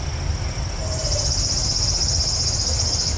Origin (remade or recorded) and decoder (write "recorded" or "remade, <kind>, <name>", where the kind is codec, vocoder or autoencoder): recorded